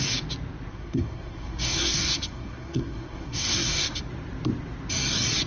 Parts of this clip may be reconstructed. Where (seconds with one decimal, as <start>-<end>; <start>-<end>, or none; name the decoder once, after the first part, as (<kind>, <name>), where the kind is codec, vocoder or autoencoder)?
0.7-4.0 (codec, SNAC)